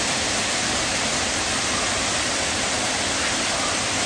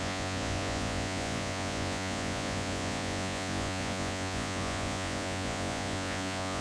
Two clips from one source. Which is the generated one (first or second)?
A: second